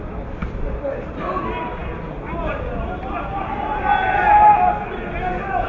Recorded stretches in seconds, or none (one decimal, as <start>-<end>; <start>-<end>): 0.0-5.7

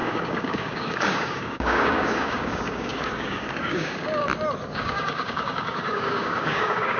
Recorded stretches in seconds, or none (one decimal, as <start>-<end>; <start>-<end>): 4.2-4.7

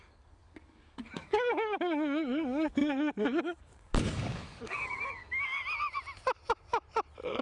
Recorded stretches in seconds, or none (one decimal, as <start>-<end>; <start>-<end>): 5.6-7.4

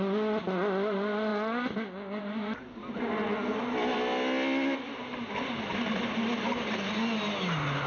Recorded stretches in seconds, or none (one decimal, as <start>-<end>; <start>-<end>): 0.0-7.9

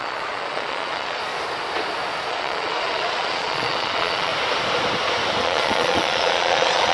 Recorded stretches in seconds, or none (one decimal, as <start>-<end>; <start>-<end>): 1.2-2.3; 4.3-5.4

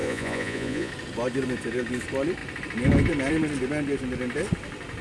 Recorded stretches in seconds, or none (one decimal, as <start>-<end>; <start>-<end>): 0.9-5.0